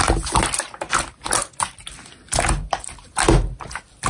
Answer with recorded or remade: recorded